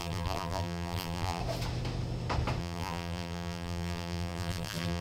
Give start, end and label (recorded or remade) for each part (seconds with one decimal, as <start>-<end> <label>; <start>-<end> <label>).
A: 0.0-1.4 remade; 1.4-2.6 recorded; 2.6-5.0 remade